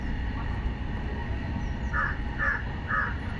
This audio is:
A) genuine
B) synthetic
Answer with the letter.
A